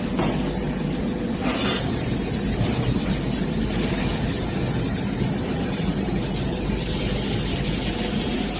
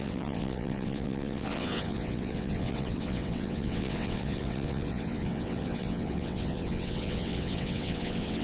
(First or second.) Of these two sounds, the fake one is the second